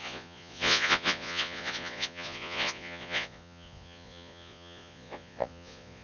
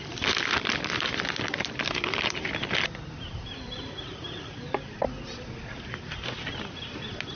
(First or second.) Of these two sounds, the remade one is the first